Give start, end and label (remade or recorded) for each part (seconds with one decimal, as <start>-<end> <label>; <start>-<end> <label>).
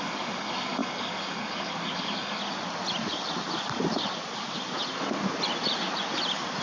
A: 0.0-2.4 remade; 2.4-6.6 recorded